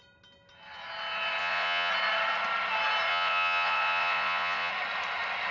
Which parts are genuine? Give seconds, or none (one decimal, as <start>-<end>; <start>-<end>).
0.0-1.4; 1.9-3.1; 4.7-5.5